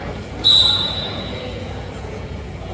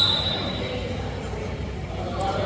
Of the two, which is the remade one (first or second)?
first